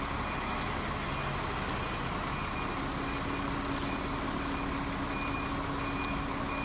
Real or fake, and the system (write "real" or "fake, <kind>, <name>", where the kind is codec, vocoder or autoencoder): real